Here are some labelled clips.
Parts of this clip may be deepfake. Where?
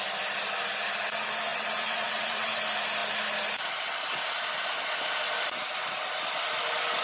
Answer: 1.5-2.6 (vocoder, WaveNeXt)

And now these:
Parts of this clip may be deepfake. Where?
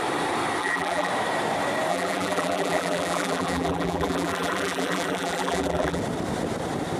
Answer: 0.6-1.1 (vocoder, BigVGAN v2); 1.9-6.0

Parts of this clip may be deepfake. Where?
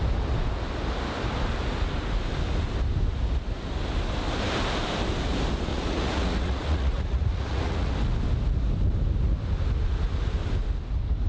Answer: 5.7-7.9 (vocoder, Vocos)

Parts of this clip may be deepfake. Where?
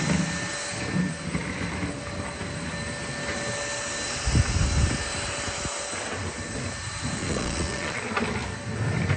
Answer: 7.2-8.0 (vocoder, Vocos)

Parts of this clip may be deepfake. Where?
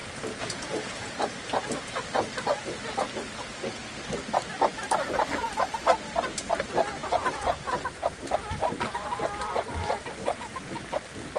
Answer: 0.0-1.2 (vocoder, Vocos); 7.0-8.1; 10.2-10.8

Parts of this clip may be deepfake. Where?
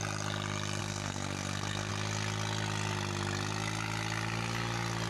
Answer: 0.8-1.9 (codec, SNAC)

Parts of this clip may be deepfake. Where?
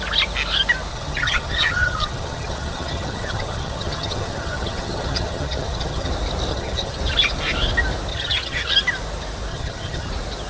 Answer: 0.9-6.1 (vocoder, HiFi-GAN); 6.5-7.0; 8.1-8.7; 9.5-10.1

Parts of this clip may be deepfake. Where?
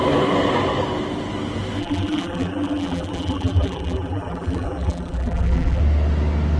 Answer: 1.8-5.8 (vocoder, BigVGAN v2)